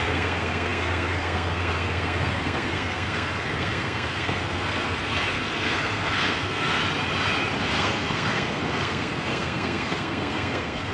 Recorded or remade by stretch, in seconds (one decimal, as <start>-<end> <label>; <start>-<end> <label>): 0.0-6.8 remade; 6.8-7.6 recorded; 7.6-10.9 remade